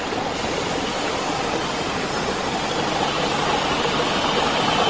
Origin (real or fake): real